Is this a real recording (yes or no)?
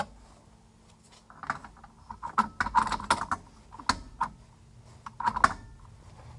yes